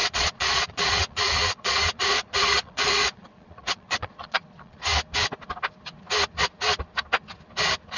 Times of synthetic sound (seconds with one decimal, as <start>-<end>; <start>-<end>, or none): 0.0-4.8